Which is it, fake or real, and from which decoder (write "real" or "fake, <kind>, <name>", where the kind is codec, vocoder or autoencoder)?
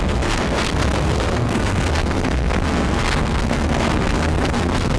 fake, codec, SNAC